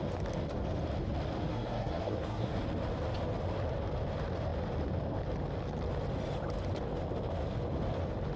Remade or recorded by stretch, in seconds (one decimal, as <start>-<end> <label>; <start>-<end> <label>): 0.0-1.5 recorded; 1.5-2.6 remade; 2.6-8.4 recorded